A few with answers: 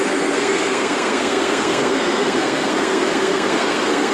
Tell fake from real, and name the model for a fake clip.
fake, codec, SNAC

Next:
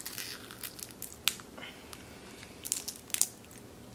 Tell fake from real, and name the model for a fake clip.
real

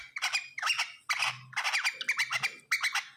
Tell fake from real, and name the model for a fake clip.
real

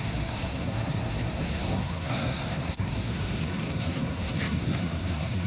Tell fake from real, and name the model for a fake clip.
fake, codec, SNAC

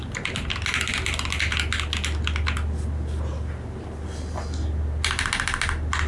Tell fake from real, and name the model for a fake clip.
real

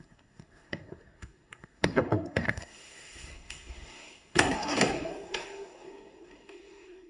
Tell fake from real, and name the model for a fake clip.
fake, codec, SNAC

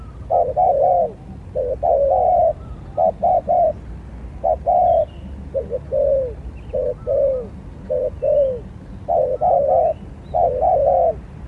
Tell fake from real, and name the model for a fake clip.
real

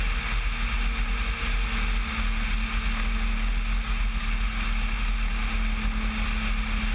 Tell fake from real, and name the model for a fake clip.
real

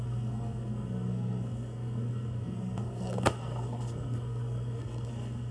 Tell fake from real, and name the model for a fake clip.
fake, codec, SNAC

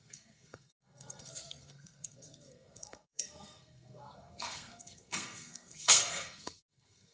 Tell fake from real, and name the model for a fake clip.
fake, codec, SNAC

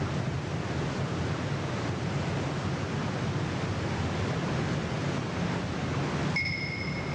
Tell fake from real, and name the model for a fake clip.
real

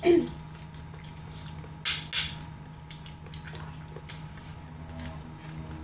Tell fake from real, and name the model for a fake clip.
real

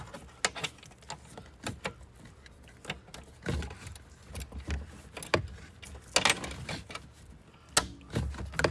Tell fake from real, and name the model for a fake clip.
real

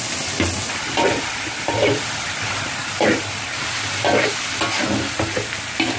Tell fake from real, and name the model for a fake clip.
real